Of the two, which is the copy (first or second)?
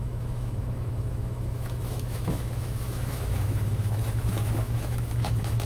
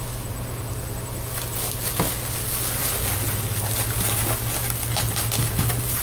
first